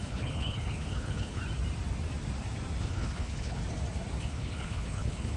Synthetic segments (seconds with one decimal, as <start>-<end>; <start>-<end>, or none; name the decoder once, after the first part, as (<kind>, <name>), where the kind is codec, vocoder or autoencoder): 0.0-1.4 (codec, HILCodec); 2.8-3.6; 4.2-5.4